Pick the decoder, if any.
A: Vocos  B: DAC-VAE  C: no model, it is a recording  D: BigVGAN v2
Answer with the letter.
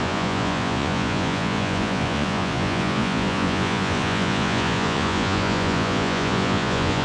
A